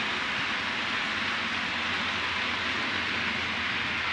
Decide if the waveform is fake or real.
real